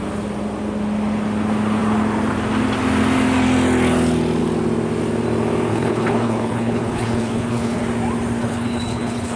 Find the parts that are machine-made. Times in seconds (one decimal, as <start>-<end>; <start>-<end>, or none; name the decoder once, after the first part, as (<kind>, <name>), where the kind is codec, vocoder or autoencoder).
5.7-7.8 (codec, HILCodec); 8.4-9.4